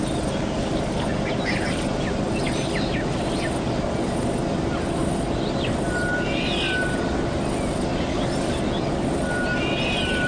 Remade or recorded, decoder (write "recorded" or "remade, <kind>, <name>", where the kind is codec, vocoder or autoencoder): recorded